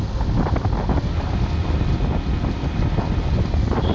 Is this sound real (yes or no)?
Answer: yes